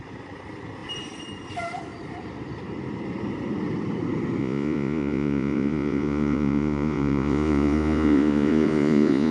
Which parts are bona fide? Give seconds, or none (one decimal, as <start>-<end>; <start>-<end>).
0.0-4.4